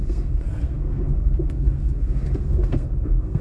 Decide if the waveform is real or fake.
fake